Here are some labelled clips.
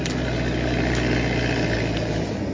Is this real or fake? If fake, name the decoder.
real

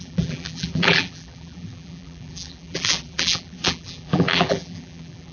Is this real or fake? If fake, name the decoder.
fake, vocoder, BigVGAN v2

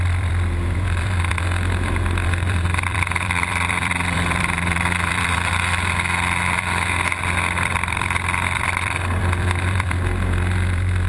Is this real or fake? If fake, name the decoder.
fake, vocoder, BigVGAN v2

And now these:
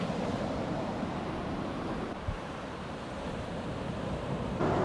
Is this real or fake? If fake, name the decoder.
fake, vocoder, BigVGAN v2